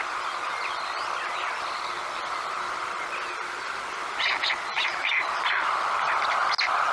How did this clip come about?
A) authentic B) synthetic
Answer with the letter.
A